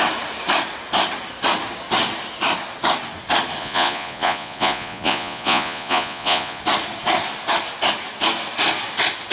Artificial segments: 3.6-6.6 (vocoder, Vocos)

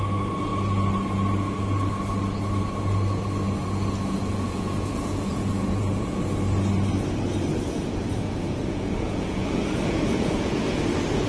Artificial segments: 4.3-6.2 (vocoder, Vocos); 7.5-10.8